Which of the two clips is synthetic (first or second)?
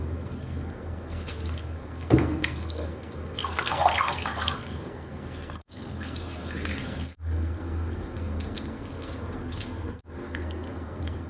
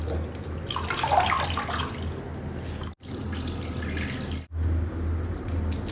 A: first